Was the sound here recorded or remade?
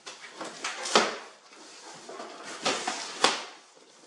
recorded